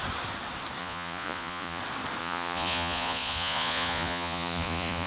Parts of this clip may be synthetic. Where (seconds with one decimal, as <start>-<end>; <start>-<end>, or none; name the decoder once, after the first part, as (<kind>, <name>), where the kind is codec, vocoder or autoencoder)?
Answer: 0.8-1.8 (vocoder, Vocos); 2.2-5.1

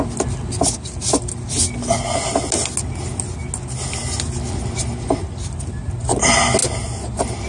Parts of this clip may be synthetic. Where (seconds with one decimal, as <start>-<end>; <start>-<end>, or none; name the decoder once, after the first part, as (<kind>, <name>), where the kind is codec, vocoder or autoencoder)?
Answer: none

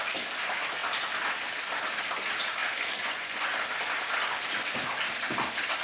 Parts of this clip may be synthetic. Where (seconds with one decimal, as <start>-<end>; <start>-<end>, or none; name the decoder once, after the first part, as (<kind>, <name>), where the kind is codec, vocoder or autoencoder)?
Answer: 2.6-3.5 (vocoder, Vocos)

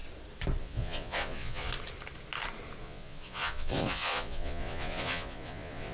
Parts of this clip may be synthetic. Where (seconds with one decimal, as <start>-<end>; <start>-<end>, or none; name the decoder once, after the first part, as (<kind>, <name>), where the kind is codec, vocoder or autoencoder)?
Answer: 0.6-1.7 (vocoder, Vocos); 2.8-5.9

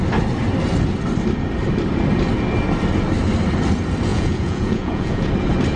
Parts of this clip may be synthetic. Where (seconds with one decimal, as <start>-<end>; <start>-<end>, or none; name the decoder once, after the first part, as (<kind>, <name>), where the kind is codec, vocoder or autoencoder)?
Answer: 4.1-5.3 (vocoder, Vocos)